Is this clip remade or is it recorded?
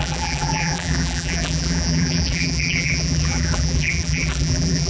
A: remade